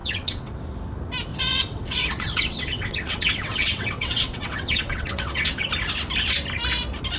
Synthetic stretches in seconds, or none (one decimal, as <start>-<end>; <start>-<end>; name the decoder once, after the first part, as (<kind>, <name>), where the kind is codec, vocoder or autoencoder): 0.0-0.6 (vocoder, WaveNeXt); 1.3-5.6